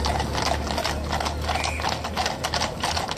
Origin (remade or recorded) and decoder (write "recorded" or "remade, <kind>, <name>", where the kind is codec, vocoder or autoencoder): recorded